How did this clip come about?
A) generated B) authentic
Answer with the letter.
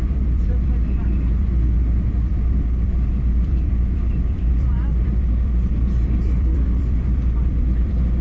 A